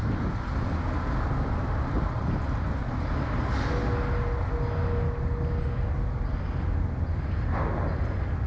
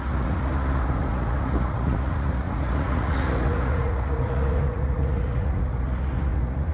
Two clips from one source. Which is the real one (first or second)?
first